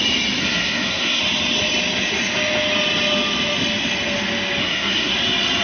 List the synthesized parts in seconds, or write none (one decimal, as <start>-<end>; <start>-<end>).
0.4-1.2; 4.6-5.1

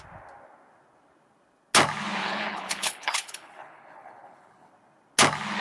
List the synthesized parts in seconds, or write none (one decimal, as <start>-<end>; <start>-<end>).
2.2-4.7

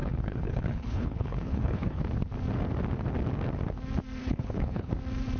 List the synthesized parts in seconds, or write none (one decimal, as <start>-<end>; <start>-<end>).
0.0-2.0; 4.2-4.9

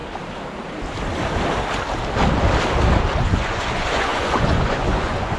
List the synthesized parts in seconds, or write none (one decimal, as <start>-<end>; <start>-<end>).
3.2-5.4